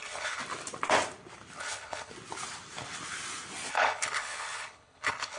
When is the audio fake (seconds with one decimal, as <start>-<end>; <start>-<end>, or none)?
0.0-0.4; 1.6-2.1; 3.7-5.4